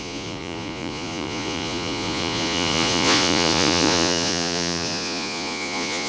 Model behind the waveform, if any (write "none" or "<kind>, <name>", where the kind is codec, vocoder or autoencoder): vocoder, Vocos